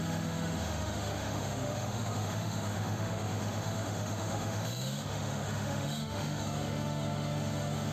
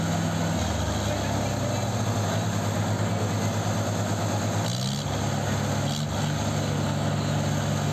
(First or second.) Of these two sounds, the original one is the second